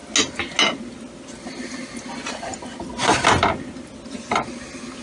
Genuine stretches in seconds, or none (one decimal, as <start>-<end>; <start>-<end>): 0.0-5.0